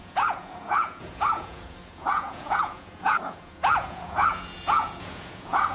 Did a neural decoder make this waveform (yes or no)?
yes